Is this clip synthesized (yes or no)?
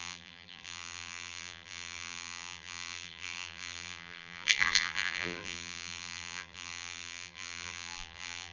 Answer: yes